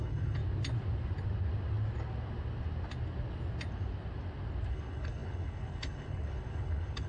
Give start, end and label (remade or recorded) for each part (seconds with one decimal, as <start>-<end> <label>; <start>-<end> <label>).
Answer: 0.0-0.4 remade; 0.4-4.7 recorded; 4.7-7.1 remade